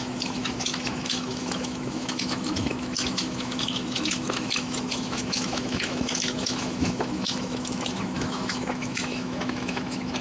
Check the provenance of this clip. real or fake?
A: fake